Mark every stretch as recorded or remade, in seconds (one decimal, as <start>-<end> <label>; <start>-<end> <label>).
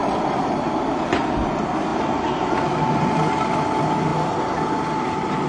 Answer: 0.0-5.5 recorded